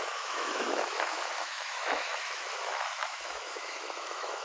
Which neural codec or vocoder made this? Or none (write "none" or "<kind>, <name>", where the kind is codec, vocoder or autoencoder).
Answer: autoencoder, DAC-VAE